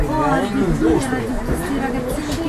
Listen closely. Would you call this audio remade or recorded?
recorded